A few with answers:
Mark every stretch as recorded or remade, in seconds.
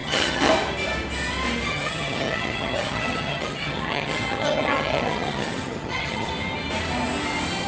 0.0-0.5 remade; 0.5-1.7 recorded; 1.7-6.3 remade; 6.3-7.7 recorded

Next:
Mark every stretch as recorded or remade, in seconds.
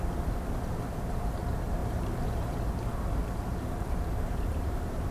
0.0-1.8 recorded; 1.8-2.6 remade; 2.6-3.2 recorded; 3.2-5.1 remade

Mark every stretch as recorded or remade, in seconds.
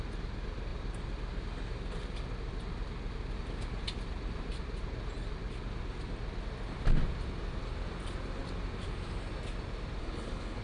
0.0-10.0 recorded; 10.0-10.6 remade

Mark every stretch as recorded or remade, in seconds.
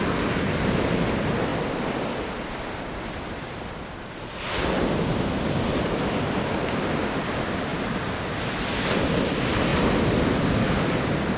0.0-11.4 recorded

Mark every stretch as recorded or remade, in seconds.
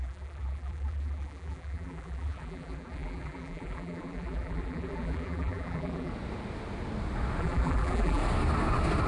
0.0-6.1 remade; 6.1-7.4 recorded; 7.4-8.2 remade; 8.2-9.1 recorded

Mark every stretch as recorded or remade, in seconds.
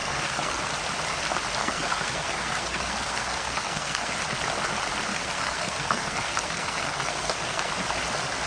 0.0-0.7 remade; 0.7-1.6 recorded; 1.6-4.2 remade; 4.2-5.1 recorded; 5.1-7.7 remade; 7.7-8.5 recorded